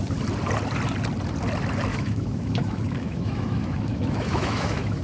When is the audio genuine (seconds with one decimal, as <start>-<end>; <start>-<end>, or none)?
0.0-1.9